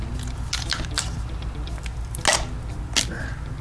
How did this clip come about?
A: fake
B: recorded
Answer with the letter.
B